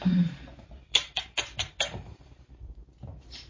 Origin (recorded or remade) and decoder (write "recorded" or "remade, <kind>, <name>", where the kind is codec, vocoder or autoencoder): remade, vocoder, BigVGAN v2